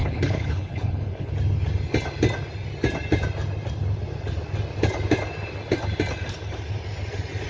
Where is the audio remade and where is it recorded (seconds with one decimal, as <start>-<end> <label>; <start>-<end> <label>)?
0.0-1.3 remade; 1.3-7.5 recorded